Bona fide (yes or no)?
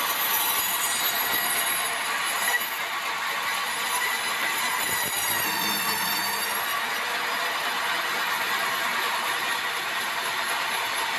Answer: yes